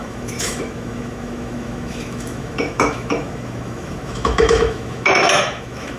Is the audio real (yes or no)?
no